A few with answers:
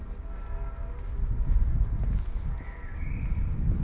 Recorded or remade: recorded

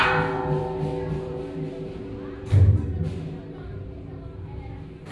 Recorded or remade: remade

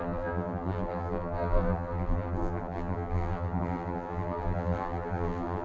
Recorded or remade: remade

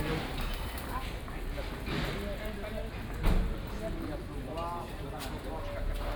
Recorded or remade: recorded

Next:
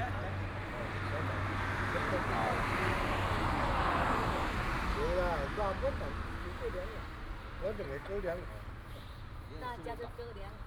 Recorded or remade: recorded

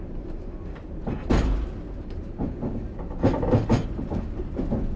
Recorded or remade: recorded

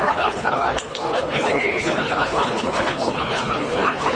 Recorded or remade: remade